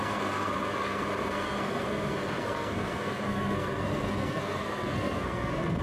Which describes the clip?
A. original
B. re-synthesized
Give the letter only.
B